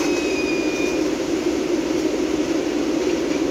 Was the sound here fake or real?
real